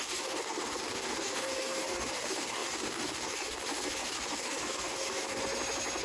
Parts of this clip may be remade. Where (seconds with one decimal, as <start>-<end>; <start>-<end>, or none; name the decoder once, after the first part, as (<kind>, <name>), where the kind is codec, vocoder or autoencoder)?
0.0-5.4 (codec, DAC)